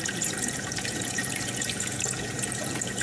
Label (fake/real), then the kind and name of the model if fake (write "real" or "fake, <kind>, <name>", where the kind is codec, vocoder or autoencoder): fake, vocoder, Vocos